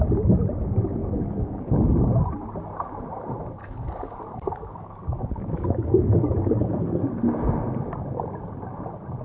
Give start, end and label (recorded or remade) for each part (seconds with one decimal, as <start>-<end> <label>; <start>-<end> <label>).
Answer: 0.0-1.0 recorded; 1.0-1.7 remade; 1.7-3.6 recorded; 3.6-7.1 remade; 7.1-9.2 recorded